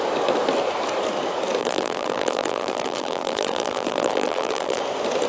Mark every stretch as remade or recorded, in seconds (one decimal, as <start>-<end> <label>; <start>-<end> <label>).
0.0-1.6 recorded; 1.6-4.8 remade; 4.8-5.3 recorded